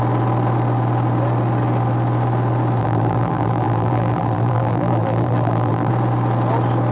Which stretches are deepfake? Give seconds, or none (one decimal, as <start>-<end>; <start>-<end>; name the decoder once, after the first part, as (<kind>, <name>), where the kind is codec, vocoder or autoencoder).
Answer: 2.8-5.9 (vocoder, BigVGAN v2)